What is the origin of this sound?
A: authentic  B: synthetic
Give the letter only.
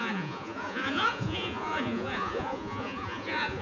B